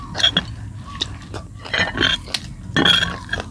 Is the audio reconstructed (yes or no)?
no